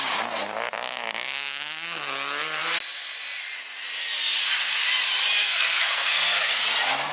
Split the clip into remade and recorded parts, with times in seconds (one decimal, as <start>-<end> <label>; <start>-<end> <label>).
0.0-5.4 recorded; 5.4-6.6 remade; 6.6-7.1 recorded